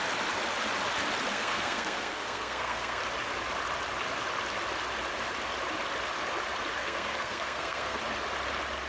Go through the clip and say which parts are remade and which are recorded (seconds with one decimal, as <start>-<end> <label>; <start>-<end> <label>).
0.0-1.3 recorded; 1.3-3.0 remade; 3.0-6.8 recorded; 6.8-8.0 remade; 8.0-8.9 recorded